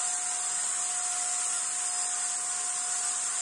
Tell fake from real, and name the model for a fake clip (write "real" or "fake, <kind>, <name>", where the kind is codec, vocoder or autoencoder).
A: real